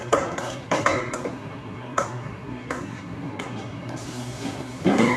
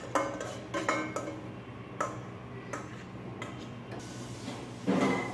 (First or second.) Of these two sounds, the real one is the second